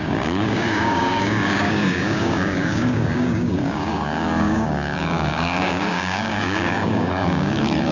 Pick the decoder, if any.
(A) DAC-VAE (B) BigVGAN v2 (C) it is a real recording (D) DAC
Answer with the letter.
D